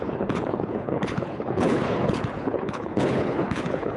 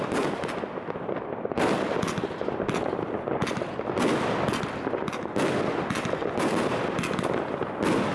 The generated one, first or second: first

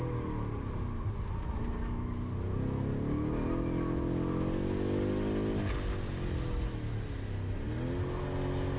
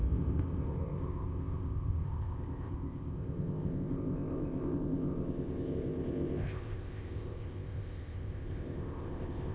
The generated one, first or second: second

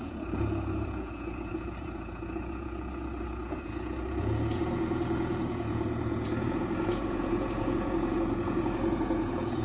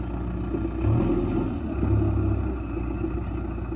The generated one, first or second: first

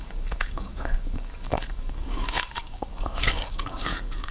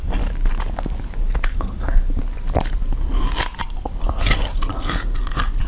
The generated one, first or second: first